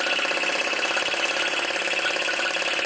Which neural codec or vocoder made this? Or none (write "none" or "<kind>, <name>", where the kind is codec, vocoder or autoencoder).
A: none